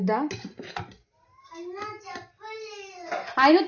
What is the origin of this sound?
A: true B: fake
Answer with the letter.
A